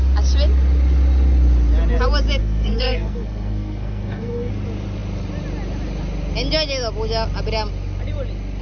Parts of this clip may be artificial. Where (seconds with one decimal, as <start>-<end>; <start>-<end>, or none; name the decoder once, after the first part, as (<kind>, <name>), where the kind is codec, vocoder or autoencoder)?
2.4-4.5 (codec, SNAC)